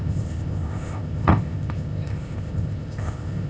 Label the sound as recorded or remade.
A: remade